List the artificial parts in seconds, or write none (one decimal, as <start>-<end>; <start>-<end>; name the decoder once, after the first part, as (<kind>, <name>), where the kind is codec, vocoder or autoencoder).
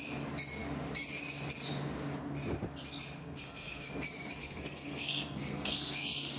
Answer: 3.2-3.9 (codec, SNAC); 4.4-6.4